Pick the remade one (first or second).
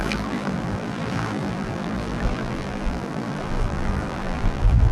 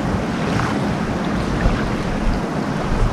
first